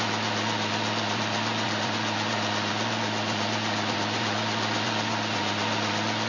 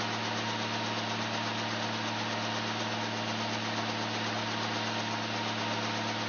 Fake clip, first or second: first